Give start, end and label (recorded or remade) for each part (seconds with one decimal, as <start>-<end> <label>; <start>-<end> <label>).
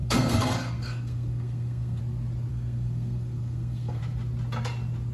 0.0-2.0 remade; 2.0-2.5 recorded; 2.5-4.0 remade; 4.0-5.1 recorded